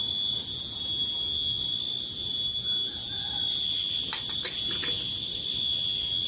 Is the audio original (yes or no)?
yes